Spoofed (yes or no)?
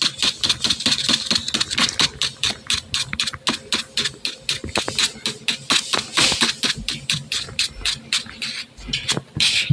no